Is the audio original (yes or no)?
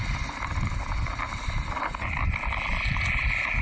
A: yes